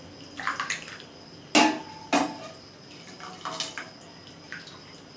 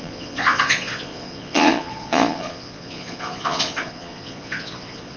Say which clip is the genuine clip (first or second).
first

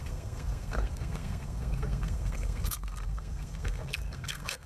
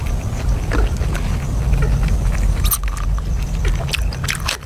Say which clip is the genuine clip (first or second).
second